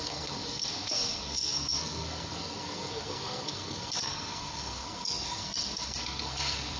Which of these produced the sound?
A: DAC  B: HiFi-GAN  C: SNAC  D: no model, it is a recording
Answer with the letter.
C